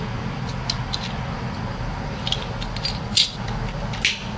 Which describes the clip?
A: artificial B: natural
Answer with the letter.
B